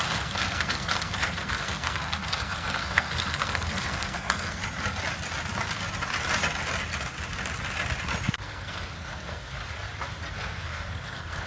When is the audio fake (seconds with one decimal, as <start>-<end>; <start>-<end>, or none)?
0.0-4.6; 8.3-9.6; 10.3-11.5